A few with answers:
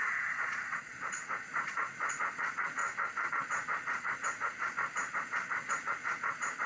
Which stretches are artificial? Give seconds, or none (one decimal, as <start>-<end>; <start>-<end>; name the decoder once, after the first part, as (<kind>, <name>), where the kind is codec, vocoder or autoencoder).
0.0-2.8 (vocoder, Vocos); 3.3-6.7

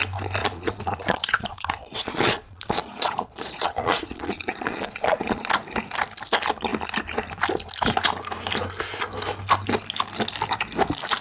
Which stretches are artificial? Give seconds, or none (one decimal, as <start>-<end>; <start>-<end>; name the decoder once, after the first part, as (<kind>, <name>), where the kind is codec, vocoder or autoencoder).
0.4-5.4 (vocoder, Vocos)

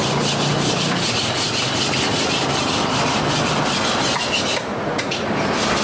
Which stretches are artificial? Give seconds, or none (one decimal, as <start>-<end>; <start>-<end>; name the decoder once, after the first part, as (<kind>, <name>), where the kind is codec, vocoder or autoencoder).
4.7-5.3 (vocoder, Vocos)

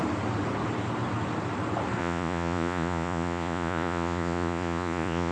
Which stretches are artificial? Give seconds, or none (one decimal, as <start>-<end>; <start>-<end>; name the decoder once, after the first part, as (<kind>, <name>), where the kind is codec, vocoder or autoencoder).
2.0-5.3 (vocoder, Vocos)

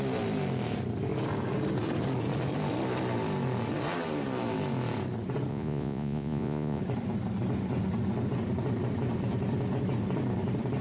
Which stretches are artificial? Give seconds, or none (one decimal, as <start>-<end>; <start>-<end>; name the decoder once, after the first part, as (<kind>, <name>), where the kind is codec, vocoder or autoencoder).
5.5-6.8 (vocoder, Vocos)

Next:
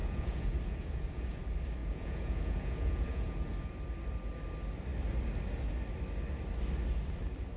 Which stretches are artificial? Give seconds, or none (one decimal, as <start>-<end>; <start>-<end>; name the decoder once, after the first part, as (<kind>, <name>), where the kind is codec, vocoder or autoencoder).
0.0-1.4 (vocoder, Vocos); 1.8-3.5